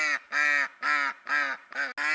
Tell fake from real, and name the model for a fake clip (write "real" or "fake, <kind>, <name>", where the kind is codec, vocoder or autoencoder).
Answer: real